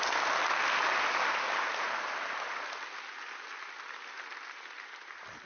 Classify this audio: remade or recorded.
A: recorded